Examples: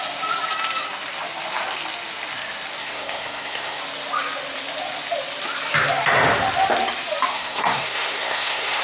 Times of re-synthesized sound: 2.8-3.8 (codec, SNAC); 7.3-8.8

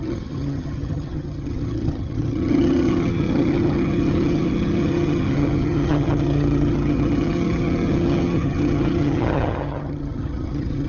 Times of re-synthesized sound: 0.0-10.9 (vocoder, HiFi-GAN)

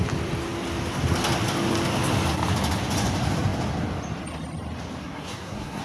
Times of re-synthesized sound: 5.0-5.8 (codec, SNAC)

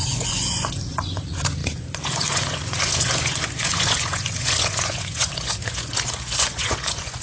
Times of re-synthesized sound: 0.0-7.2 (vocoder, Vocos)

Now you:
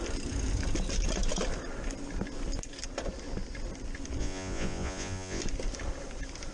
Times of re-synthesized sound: 4.2-5.4 (vocoder, Vocos)

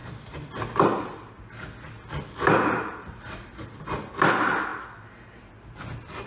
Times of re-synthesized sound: none

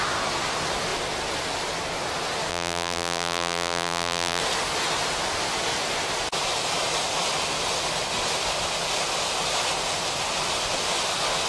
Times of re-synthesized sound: 2.5-4.4 (vocoder, BigVGAN v2)

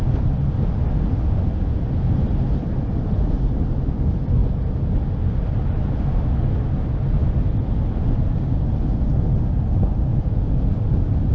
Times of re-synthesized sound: 10.1-10.7 (vocoder, Vocos)